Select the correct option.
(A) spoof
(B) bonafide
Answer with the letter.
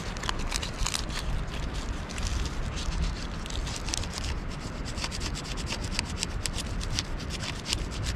B